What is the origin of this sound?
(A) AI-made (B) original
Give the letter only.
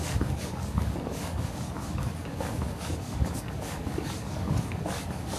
A